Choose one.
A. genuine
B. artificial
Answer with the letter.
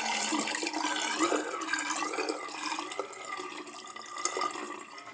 A